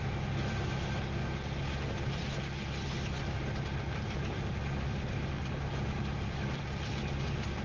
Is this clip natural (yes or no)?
yes